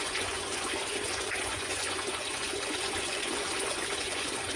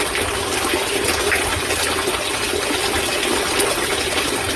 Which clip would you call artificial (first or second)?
first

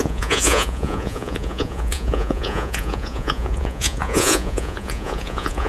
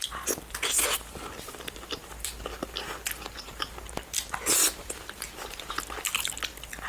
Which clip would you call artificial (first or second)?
first